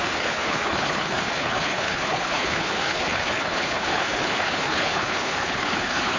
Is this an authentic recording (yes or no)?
no